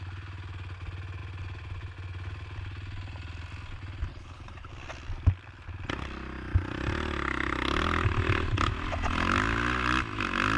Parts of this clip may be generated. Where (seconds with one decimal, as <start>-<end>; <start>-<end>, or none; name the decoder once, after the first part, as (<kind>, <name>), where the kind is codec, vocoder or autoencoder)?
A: 4.1-4.7 (codec, HILCodec)